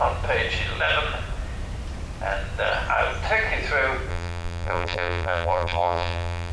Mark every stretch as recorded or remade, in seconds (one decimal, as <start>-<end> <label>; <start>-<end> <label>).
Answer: 0.0-4.1 recorded; 4.1-6.5 remade